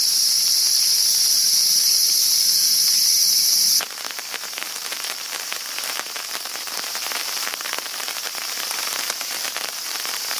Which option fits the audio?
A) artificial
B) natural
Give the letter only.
A